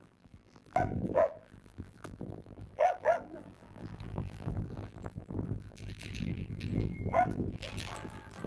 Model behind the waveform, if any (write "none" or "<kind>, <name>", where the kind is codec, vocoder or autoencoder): vocoder, BigVGAN v2